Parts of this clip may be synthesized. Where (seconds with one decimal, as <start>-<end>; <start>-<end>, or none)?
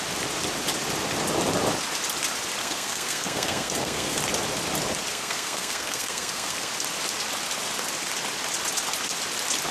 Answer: 2.6-4.2; 5.1-6.7